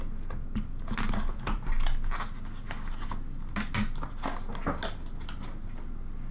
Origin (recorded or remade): recorded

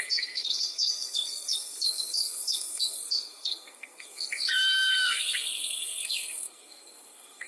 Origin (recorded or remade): remade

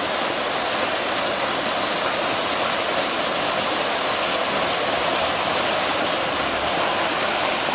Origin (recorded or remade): recorded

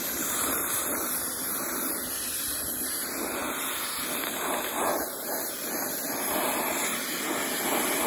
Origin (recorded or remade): remade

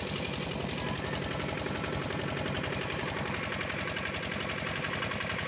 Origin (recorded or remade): recorded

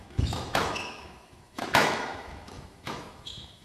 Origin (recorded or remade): remade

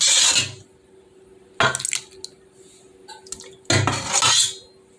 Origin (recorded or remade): recorded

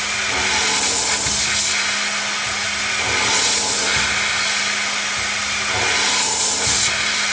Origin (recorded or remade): recorded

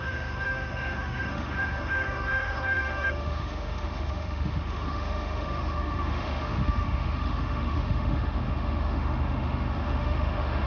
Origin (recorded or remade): remade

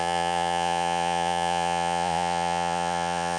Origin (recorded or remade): remade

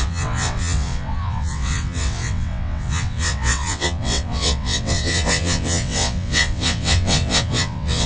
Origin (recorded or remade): remade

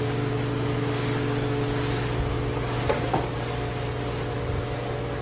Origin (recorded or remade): recorded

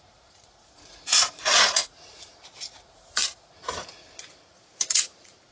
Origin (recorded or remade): remade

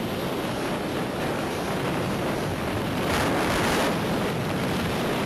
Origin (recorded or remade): remade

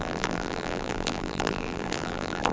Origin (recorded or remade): remade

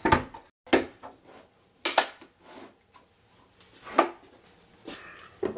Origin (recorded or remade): recorded